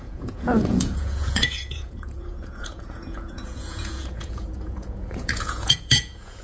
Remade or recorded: remade